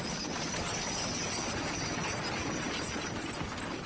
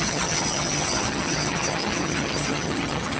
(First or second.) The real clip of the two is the first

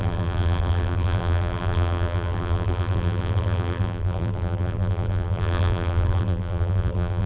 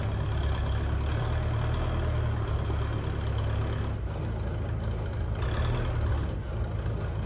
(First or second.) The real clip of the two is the second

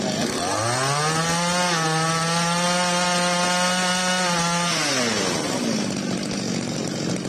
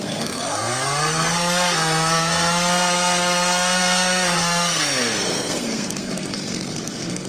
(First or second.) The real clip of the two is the first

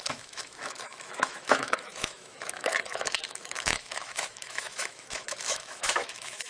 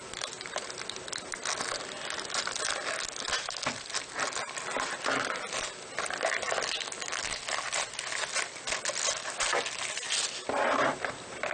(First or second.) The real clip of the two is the second